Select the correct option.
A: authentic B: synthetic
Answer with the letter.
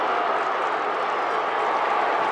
A